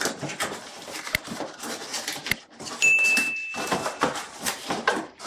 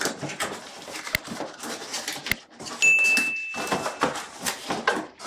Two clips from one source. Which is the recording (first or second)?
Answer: second